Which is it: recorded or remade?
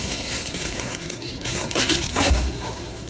remade